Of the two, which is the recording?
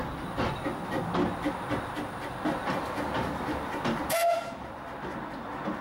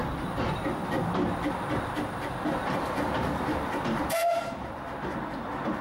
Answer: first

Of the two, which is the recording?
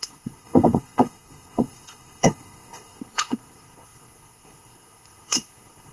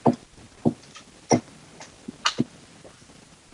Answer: second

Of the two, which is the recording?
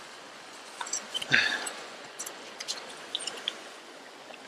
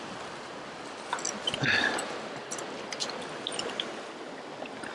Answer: second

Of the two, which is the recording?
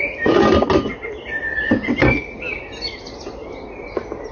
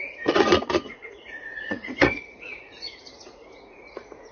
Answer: first